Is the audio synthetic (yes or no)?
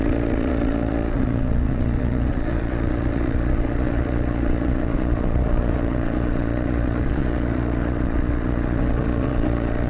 yes